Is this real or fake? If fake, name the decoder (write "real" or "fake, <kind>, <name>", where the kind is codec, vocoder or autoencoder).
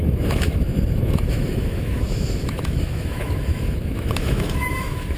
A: fake, autoencoder, DAC-VAE